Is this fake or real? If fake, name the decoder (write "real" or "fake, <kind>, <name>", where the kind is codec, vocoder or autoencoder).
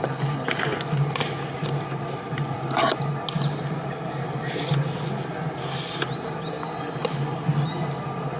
real